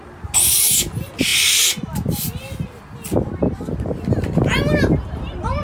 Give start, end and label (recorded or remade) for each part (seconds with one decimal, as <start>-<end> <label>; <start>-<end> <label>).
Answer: 0.0-5.6 recorded